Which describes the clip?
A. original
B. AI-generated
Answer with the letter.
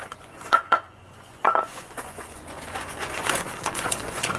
B